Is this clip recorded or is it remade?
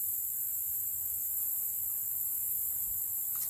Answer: recorded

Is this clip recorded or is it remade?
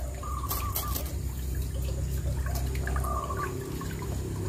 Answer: recorded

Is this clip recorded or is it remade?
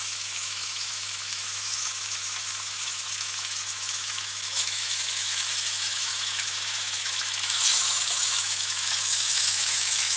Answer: remade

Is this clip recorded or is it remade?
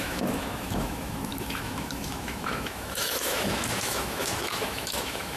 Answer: remade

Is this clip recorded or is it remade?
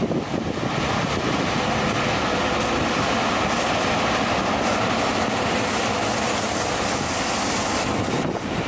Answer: recorded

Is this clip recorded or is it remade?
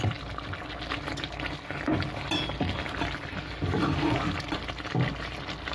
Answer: recorded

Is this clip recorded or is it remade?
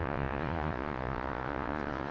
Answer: remade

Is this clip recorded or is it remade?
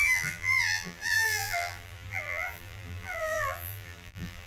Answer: remade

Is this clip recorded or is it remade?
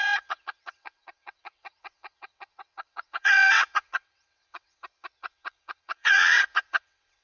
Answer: remade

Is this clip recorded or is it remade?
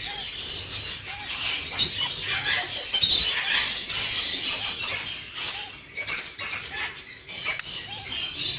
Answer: recorded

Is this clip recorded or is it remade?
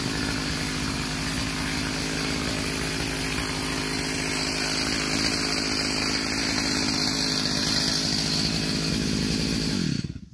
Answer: recorded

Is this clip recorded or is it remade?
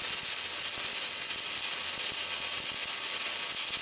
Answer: recorded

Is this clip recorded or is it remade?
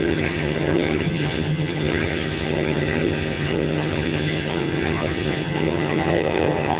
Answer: remade